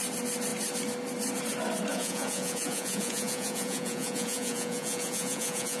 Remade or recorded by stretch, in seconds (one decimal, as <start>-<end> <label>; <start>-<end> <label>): 0.0-1.9 recorded; 1.9-5.8 remade